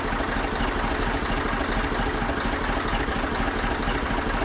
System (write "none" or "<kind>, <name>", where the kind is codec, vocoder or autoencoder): none